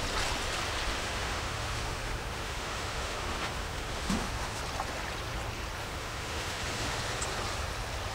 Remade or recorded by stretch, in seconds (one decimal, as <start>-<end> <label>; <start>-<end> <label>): 0.0-0.9 recorded; 0.9-4.6 remade; 4.6-5.8 recorded; 5.8-7.0 remade; 7.0-8.1 recorded